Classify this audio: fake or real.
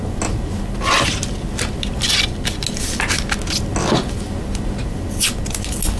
real